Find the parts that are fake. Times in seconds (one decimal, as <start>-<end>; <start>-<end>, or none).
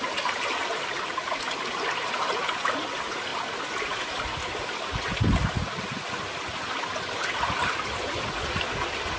none